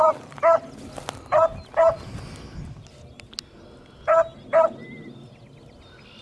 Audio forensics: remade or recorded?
recorded